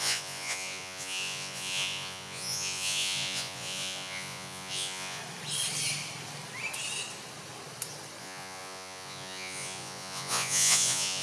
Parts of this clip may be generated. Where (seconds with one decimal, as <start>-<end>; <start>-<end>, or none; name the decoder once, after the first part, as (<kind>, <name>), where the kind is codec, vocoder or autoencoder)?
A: 0.0-5.2 (vocoder, Vocos); 8.2-11.2

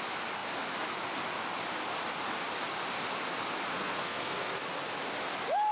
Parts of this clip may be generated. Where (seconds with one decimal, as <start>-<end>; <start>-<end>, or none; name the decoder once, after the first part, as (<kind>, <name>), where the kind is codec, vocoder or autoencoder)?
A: 3.7-4.6 (codec, SNAC)